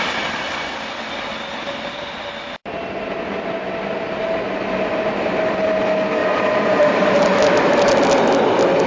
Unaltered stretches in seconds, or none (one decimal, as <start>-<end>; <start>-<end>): 0.0-6.2; 7.4-8.9

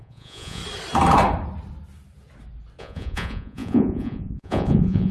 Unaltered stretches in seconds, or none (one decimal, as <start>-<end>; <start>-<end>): 0.6-2.8

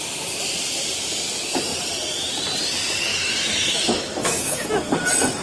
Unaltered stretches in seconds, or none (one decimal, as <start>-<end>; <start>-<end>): 0.0-3.1; 4.7-5.4

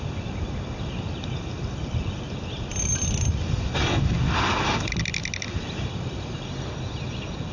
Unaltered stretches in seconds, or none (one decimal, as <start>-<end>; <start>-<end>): 0.0-1.5; 2.2-7.5

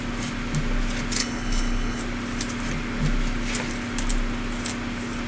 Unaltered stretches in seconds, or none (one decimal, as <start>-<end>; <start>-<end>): 0.0-1.2; 2.0-5.3